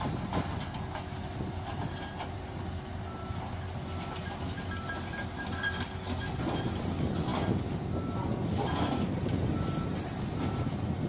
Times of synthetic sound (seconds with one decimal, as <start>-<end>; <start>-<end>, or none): none